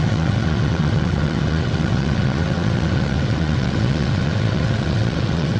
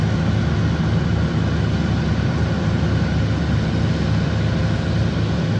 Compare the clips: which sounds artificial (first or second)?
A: first